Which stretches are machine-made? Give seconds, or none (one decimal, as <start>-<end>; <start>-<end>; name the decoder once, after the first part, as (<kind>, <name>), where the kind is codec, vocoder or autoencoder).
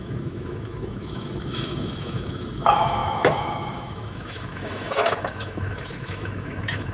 0.0-6.9 (autoencoder, DAC-VAE)